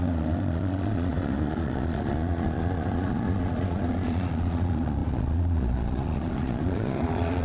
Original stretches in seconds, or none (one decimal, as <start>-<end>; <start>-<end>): none